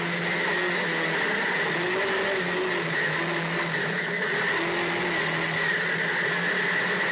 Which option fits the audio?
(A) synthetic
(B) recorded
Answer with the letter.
B